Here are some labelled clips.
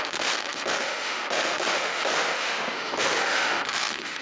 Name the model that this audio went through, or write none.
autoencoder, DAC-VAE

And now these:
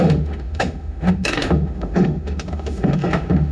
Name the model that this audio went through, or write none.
autoencoder, DAC-VAE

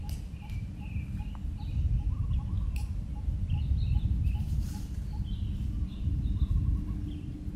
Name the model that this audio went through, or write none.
none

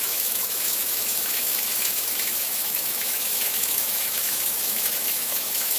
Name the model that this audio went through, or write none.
autoencoder, DAC-VAE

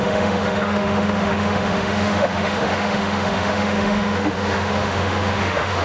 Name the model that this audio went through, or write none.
autoencoder, DAC-VAE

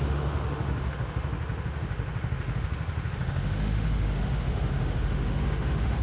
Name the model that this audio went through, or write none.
autoencoder, DAC-VAE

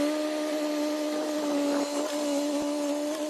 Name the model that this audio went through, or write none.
none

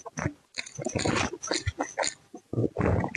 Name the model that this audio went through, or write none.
none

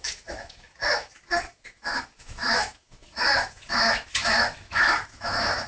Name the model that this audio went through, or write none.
autoencoder, DAC-VAE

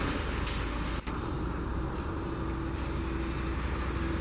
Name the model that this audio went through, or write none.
none